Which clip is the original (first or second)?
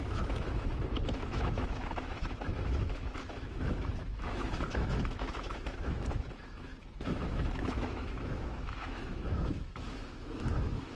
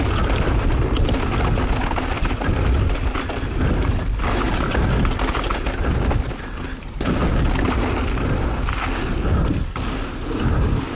second